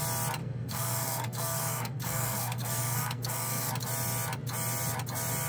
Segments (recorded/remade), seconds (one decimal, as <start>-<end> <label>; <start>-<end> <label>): 0.0-0.4 recorded; 0.4-3.7 remade; 3.7-5.5 recorded